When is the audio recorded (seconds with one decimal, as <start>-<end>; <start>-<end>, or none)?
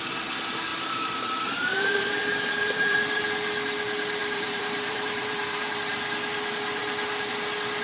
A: 0.0-0.7; 3.2-4.2; 5.7-7.8